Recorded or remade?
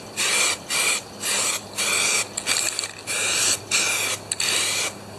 recorded